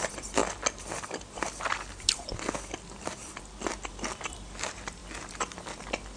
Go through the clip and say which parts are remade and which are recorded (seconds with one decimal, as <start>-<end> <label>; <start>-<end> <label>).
0.0-0.4 remade; 0.4-3.9 recorded; 3.9-5.0 remade; 5.0-5.8 recorded; 5.8-6.2 remade